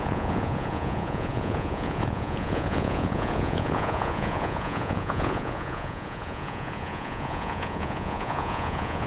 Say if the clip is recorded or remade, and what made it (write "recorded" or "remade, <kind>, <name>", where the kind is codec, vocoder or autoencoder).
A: remade, vocoder, Vocos